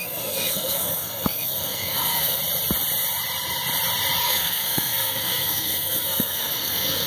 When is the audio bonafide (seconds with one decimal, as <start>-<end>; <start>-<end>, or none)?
2.4-4.2